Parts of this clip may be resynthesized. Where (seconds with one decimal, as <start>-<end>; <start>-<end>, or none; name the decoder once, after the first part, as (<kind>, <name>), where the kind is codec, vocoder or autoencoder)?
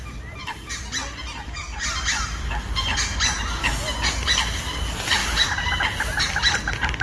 0.4-1.8 (vocoder, BigVGAN v2); 5.2-6.6